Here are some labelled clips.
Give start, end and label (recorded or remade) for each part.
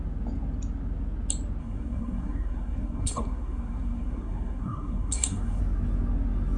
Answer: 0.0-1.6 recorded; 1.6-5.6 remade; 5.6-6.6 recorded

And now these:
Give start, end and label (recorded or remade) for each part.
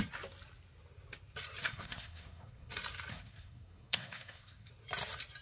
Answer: 0.0-1.7 recorded; 1.7-2.7 remade; 2.7-3.1 recorded; 3.1-4.7 remade; 4.7-5.4 recorded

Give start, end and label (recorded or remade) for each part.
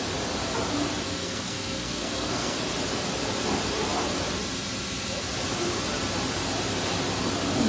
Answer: 0.0-1.2 recorded; 1.2-2.6 remade; 2.6-7.7 recorded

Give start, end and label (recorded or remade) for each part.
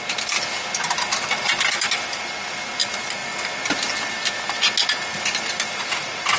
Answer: 0.0-6.4 recorded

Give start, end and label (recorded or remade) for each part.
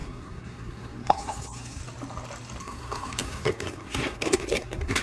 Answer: 0.0-1.8 remade; 1.8-2.6 recorded; 2.6-5.0 remade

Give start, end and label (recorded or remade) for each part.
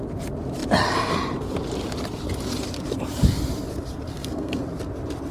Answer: 0.0-4.1 recorded; 4.1-4.6 remade; 4.6-5.3 recorded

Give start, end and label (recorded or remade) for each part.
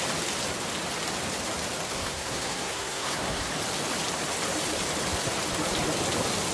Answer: 0.0-1.9 recorded; 1.9-3.5 remade; 3.5-6.5 recorded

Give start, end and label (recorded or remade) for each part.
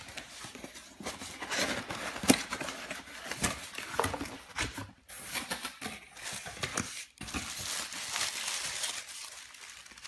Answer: 0.0-10.1 recorded